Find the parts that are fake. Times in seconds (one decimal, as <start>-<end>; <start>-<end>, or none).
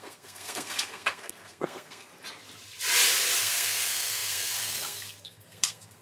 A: 0.0-2.1; 3.4-6.0